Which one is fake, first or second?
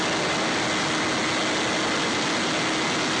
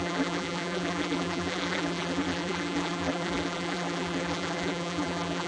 second